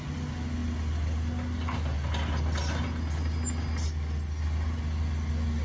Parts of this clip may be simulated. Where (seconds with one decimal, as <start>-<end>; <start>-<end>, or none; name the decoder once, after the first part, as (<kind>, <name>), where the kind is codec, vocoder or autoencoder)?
none